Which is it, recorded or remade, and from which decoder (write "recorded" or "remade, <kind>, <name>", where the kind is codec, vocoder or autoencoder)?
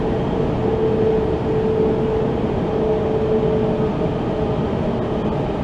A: recorded